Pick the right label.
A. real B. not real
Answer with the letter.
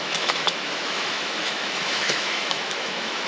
B